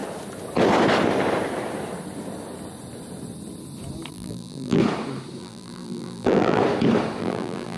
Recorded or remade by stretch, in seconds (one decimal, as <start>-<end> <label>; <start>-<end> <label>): 0.0-4.1 recorded; 4.1-4.8 remade; 4.8-5.4 recorded; 5.4-6.6 remade; 6.6-7.2 recorded; 7.2-7.8 remade

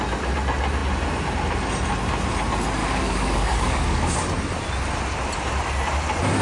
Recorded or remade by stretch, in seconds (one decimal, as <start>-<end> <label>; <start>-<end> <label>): 0.0-2.8 recorded; 2.8-4.1 remade; 4.1-6.4 recorded

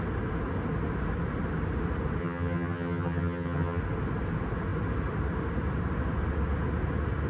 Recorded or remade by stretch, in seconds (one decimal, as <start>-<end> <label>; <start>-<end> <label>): 0.0-2.2 recorded; 2.2-3.8 remade; 3.8-7.3 recorded

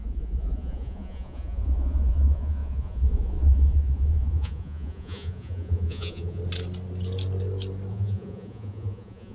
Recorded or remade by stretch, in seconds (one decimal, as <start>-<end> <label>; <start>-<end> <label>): 0.0-6.4 remade; 6.4-7.9 recorded; 7.9-9.3 remade

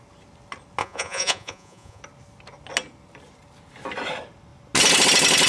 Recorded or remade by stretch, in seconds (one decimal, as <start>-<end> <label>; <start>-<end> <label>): 0.0-0.8 recorded; 0.8-2.0 remade; 2.0-5.5 recorded

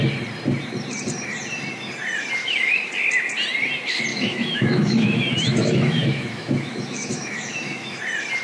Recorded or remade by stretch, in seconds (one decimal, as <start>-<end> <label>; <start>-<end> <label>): 0.0-2.4 recorded; 2.4-2.9 remade; 2.9-4.1 recorded; 4.1-8.0 remade; 8.0-8.4 recorded